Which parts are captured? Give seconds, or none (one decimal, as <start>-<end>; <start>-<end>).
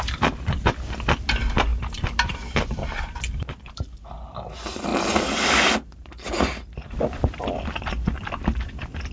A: none